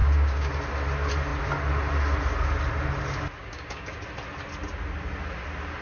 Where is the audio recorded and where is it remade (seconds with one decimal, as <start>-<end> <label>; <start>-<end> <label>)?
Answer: 0.0-0.5 remade; 0.5-3.4 recorded; 3.4-4.0 remade; 4.0-5.8 recorded